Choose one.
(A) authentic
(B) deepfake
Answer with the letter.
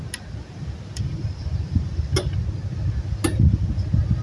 A